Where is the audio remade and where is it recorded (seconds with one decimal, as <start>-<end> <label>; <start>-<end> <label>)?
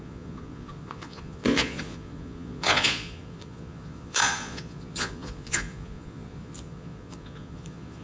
0.0-8.0 remade